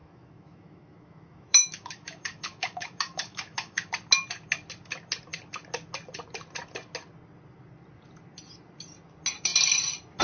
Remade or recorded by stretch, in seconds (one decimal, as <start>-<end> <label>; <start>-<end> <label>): 0.0-3.9 remade; 3.9-10.2 recorded

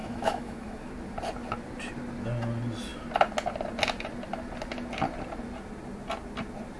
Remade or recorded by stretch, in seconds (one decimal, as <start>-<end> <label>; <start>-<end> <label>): 0.0-0.9 remade; 0.9-6.8 recorded

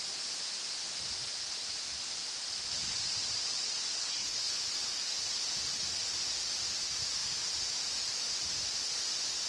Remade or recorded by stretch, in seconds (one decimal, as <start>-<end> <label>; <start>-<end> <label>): 0.0-4.0 recorded; 4.0-4.6 remade; 4.6-9.5 recorded

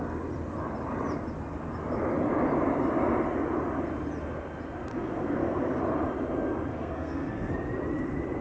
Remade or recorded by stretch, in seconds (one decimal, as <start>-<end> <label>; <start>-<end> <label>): 0.0-4.9 recorded; 4.9-5.8 remade; 5.8-6.7 recorded; 6.7-7.5 remade; 7.5-8.4 recorded

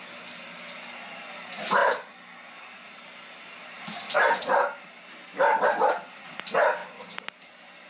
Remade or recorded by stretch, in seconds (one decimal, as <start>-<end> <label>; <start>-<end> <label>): 0.0-7.9 recorded

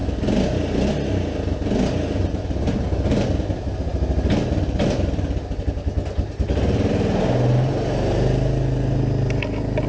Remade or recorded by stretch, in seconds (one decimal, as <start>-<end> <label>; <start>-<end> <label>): 0.0-9.9 recorded